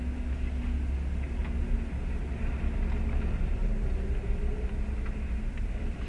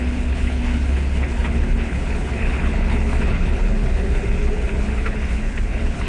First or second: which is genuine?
first